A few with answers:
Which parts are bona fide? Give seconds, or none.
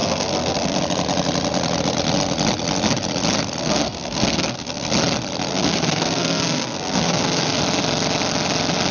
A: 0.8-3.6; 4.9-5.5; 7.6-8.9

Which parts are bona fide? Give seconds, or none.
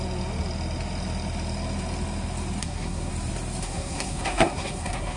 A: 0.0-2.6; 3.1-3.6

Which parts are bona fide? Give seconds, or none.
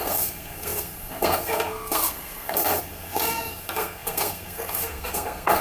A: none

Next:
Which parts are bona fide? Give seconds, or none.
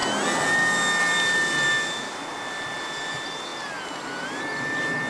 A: 0.0-5.1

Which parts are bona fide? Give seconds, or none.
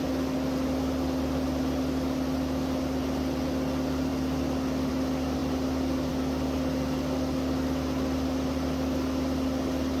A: 0.0-10.0